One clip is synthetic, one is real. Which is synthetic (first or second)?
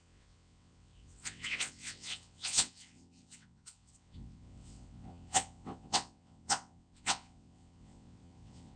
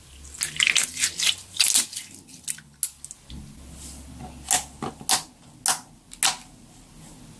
first